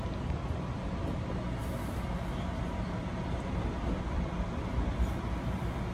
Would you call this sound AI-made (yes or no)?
no